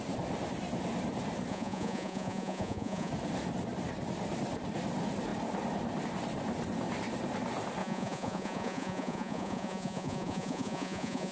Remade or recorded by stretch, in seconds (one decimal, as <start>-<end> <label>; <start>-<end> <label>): 0.0-1.5 recorded; 1.5-3.1 remade; 3.1-7.8 recorded; 7.8-11.3 remade